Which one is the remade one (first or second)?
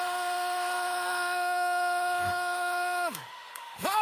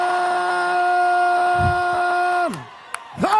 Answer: first